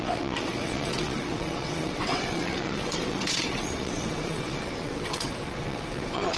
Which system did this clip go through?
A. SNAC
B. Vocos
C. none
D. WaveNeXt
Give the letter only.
D